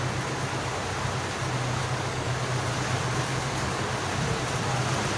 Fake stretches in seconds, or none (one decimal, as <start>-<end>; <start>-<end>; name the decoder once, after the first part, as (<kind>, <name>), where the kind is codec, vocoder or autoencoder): 1.8-2.3 (codec, DAC); 3.3-3.8